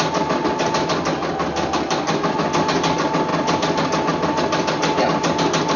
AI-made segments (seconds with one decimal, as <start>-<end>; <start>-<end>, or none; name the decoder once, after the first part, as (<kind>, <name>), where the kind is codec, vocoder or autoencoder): none